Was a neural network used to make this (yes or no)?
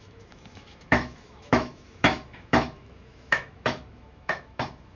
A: yes